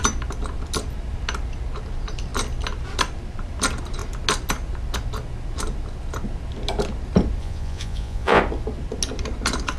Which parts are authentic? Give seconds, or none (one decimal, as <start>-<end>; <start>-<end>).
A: 0.0-7.4; 8.4-9.8